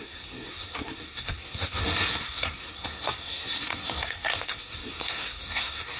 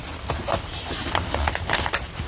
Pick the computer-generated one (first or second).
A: first